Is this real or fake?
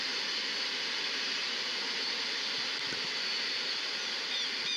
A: real